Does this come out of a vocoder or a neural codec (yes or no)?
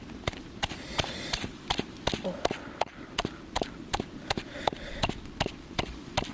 no